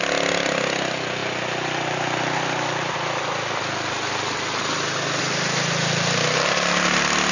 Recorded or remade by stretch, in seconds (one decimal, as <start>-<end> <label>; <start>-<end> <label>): 0.0-7.3 recorded